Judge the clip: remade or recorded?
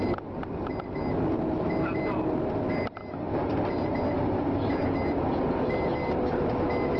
recorded